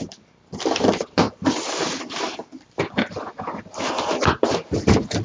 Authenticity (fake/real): fake